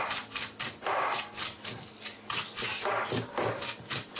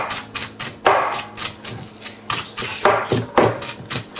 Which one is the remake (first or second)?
first